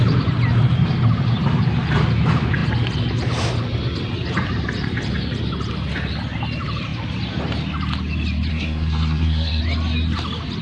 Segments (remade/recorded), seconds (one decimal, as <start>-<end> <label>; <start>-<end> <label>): 0.0-8.5 recorded; 8.5-9.6 remade; 9.6-10.6 recorded